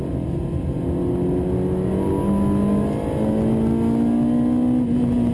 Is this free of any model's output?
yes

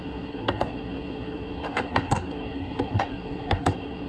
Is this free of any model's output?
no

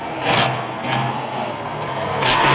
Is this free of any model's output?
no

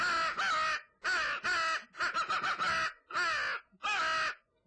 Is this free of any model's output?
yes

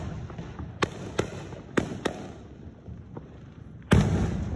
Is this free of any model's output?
yes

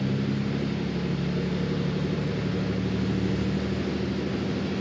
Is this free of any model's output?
yes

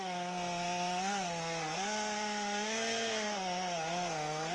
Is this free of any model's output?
no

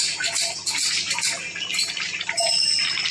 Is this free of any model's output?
yes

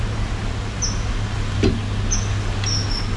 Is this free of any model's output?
yes